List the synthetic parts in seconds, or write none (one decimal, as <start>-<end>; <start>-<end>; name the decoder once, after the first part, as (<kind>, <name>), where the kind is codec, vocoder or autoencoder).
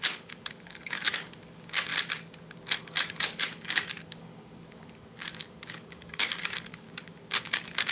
0.0-1.9 (codec, DAC); 2.8-7.9